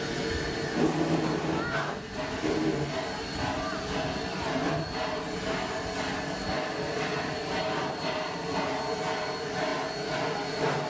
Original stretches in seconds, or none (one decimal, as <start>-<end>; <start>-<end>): 0.0-10.9